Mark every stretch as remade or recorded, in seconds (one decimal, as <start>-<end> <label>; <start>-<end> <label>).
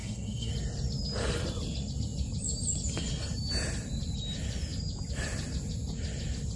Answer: 0.0-0.5 remade; 0.5-6.6 recorded